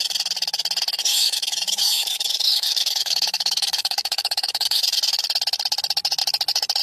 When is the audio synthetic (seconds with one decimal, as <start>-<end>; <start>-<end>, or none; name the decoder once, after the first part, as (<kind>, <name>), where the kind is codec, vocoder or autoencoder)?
1.1-4.8 (codec, DAC)